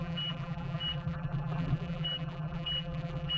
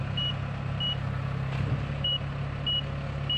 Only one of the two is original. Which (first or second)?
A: second